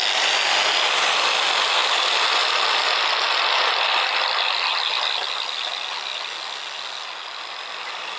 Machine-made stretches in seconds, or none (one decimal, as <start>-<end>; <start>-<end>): none